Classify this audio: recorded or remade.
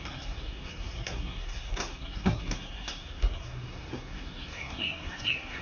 remade